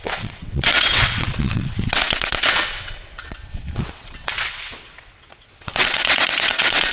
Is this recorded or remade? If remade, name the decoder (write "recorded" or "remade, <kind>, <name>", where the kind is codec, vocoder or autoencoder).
remade, vocoder, WaveNeXt